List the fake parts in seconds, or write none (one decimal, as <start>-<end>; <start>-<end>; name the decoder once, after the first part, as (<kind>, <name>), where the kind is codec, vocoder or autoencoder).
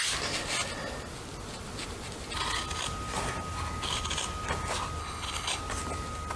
5.0-5.6 (codec, HILCodec)